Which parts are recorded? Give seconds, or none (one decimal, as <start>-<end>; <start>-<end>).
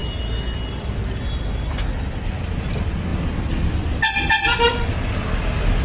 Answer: 0.0-5.8